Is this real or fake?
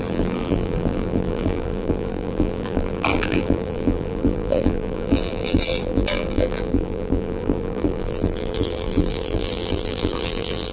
fake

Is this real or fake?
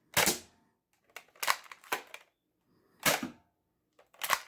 real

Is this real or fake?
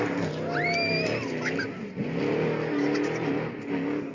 real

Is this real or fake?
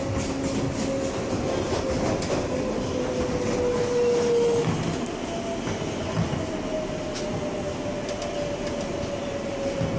real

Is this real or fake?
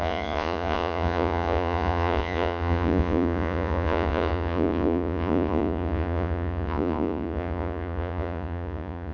fake